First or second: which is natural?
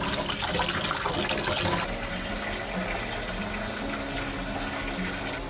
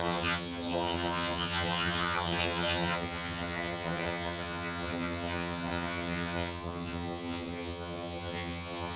first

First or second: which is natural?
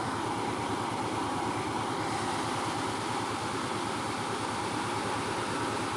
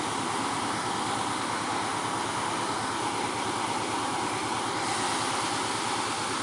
second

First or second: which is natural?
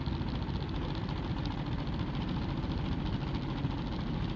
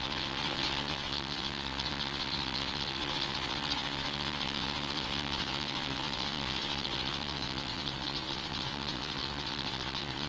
first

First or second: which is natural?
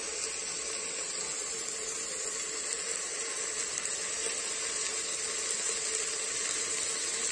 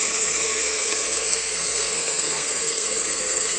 first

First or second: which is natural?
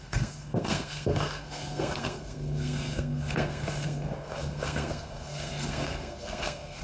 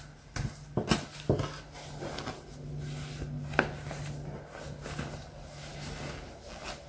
second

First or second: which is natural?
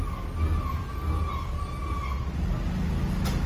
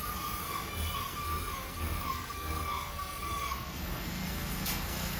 first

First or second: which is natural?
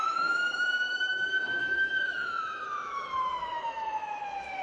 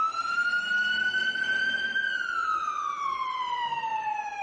second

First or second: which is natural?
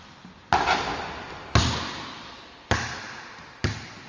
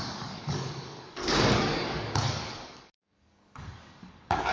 first